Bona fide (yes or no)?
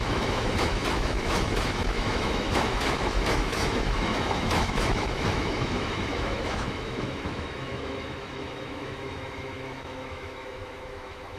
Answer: no